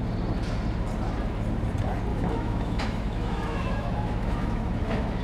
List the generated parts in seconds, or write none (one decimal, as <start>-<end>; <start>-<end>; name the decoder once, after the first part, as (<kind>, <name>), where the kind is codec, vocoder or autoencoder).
2.1-5.2 (autoencoder, DAC-VAE)